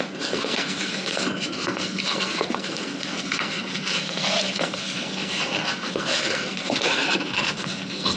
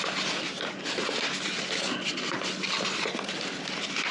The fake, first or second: first